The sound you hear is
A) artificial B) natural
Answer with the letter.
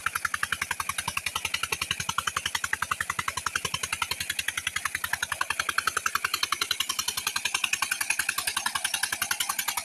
B